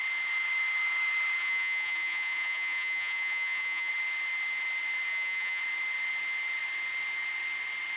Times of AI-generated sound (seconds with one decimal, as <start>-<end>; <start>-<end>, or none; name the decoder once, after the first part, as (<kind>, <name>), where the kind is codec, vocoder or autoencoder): 1.4-3.9 (vocoder, Vocos); 5.1-5.6